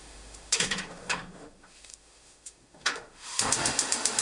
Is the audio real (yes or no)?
no